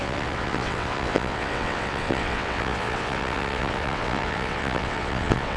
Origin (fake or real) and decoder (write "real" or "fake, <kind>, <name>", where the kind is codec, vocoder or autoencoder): fake, vocoder, WaveNeXt